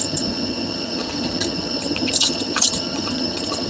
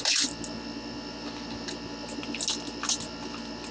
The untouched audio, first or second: second